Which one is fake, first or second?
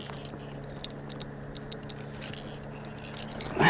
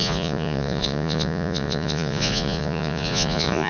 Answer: second